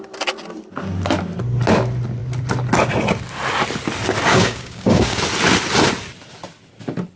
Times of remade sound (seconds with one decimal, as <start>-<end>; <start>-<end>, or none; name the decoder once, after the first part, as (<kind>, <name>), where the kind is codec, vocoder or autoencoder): 4.3-5.2 (codec, DAC)